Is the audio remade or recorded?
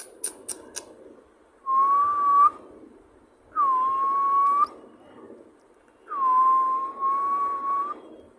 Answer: recorded